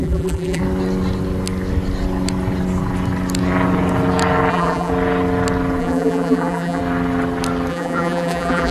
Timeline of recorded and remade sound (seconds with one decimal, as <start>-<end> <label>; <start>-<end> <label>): 0.0-0.6 remade; 0.6-4.5 recorded; 4.5-4.9 remade; 4.9-5.8 recorded; 5.8-6.8 remade; 6.8-7.7 recorded; 7.7-8.7 remade